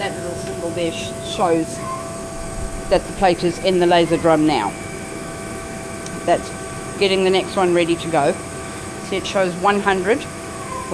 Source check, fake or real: fake